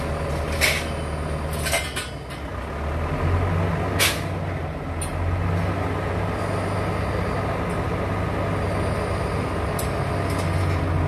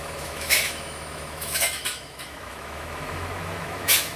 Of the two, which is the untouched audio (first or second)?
first